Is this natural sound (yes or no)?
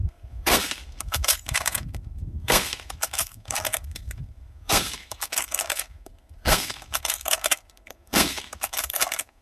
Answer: no